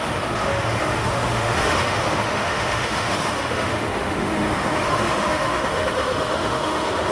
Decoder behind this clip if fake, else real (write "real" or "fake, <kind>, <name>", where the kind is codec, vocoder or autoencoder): fake, autoencoder, DAC-VAE